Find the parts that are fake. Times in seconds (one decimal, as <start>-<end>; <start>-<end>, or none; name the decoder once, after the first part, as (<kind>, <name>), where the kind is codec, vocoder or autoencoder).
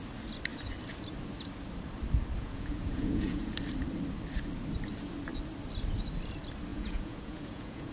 2.4-3.6 (vocoder, Vocos); 6.7-7.9